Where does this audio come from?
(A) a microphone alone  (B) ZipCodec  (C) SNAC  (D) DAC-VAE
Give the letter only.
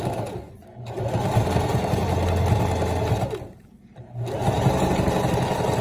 A